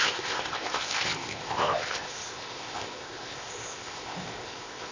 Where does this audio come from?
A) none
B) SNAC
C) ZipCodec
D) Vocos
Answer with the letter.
C